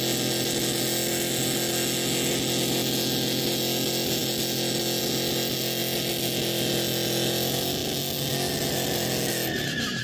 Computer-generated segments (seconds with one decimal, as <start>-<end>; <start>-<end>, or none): none